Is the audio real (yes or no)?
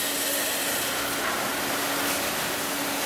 yes